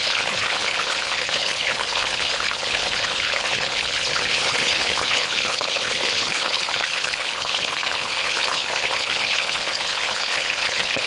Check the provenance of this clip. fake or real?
fake